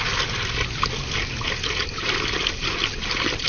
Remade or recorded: recorded